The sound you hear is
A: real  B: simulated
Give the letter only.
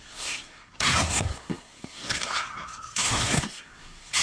B